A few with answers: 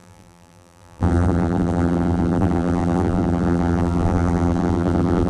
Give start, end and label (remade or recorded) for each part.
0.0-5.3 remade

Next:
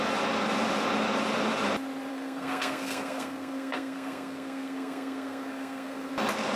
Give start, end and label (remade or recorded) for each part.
0.0-2.1 recorded; 2.1-6.1 remade; 6.1-6.6 recorded

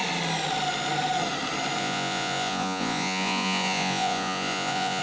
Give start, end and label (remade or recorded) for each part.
0.0-1.8 recorded; 1.8-5.0 remade

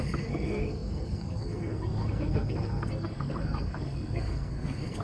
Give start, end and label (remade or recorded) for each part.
0.0-5.0 remade